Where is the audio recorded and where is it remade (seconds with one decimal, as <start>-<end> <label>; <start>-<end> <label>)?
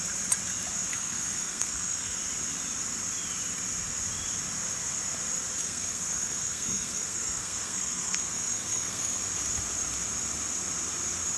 0.0-0.9 recorded; 0.9-2.2 remade; 2.2-5.6 recorded; 5.6-9.2 remade; 9.2-11.4 recorded